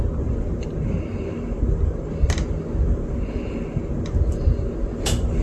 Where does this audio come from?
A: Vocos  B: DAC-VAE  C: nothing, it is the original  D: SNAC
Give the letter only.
C